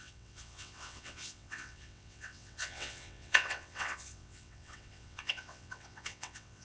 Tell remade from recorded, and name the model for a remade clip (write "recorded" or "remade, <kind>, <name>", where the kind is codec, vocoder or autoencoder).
remade, vocoder, WaveNeXt